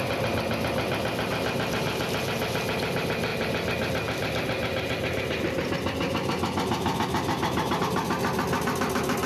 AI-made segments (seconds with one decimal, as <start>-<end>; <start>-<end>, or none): none